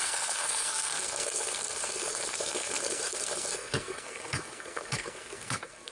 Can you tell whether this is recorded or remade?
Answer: remade